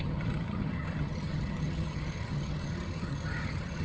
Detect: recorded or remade remade